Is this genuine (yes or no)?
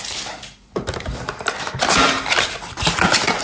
yes